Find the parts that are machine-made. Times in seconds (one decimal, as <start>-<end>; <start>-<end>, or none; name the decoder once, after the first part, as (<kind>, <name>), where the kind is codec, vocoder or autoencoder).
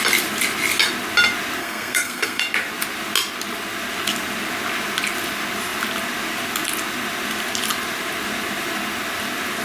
1.6-2.4 (codec, SNAC)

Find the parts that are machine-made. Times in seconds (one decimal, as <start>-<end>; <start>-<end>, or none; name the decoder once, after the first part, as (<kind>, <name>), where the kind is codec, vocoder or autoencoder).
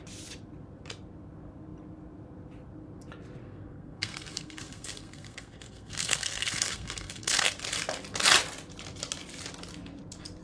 3.4-7.5 (codec, SNAC)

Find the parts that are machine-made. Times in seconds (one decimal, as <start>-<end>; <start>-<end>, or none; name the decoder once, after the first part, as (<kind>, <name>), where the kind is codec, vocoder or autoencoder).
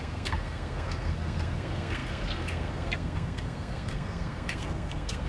0.0-5.3 (codec, SNAC)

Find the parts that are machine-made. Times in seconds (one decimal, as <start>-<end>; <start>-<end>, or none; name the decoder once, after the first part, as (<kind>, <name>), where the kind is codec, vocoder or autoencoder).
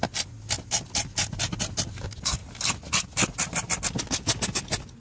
none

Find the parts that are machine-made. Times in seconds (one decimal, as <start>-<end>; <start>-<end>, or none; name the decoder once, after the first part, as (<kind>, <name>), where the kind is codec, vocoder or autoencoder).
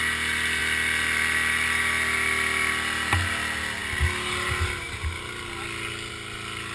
none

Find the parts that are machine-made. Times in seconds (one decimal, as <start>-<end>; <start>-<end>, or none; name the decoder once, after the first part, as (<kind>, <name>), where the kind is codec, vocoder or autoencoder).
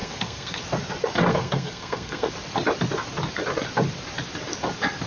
0.0-0.6 (codec, SNAC); 1.3-2.3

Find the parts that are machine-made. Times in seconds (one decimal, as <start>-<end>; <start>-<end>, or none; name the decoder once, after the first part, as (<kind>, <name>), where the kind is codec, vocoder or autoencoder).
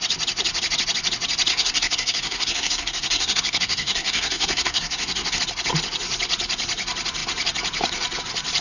1.5-5.4 (codec, SNAC)